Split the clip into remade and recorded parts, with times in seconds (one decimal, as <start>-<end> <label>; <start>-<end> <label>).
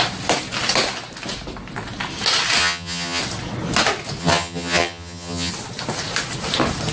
0.0-2.6 recorded; 2.6-3.2 remade; 3.2-4.2 recorded; 4.2-5.5 remade; 5.5-6.9 recorded